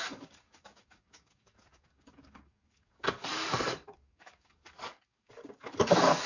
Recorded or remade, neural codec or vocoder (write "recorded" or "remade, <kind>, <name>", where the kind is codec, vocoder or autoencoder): remade, codec, DAC